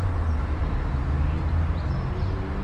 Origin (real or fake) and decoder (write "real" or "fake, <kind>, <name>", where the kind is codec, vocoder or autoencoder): real